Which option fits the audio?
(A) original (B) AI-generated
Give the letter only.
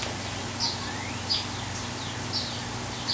A